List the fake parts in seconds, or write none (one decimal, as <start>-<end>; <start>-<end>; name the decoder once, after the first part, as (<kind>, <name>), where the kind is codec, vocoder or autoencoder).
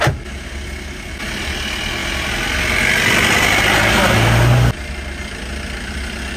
none